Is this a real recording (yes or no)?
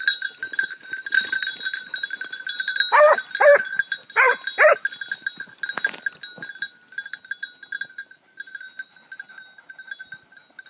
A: yes